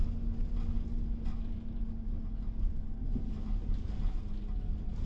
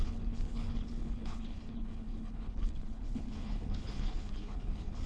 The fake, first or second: second